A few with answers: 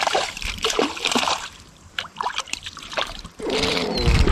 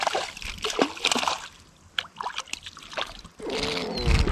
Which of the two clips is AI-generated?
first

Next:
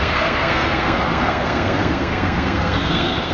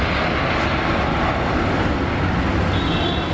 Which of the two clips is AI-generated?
first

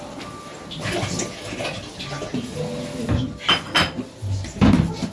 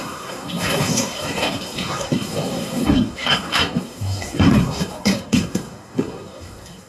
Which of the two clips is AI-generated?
second